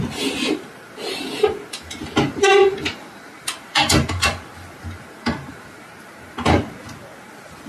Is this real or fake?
real